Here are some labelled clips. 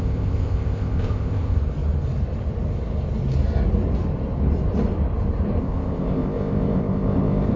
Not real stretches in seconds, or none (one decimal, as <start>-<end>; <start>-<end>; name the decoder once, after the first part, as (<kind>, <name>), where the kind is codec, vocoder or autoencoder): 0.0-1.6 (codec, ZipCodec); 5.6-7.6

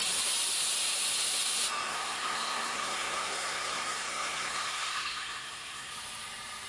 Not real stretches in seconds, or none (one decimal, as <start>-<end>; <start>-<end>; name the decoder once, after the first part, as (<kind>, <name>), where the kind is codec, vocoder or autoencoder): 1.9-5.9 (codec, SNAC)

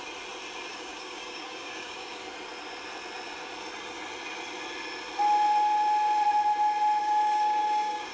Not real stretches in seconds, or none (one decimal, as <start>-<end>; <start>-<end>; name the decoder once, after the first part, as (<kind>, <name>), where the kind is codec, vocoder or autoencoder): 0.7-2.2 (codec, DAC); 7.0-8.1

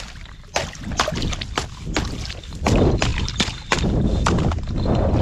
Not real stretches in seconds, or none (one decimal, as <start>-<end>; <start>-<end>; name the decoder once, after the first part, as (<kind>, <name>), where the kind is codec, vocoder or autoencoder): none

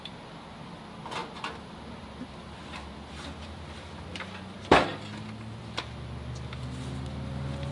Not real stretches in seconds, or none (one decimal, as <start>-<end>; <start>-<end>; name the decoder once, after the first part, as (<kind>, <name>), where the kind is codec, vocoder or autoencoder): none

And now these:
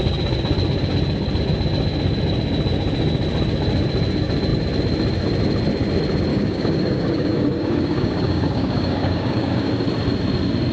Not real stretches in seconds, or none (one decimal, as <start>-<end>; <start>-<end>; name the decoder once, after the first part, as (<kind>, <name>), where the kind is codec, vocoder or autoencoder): 6.3-9.7 (codec, DAC)